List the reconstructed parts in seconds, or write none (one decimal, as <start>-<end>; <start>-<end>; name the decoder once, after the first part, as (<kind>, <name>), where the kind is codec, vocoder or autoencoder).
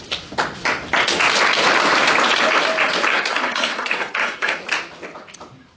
3.1-4.6 (codec, SNAC)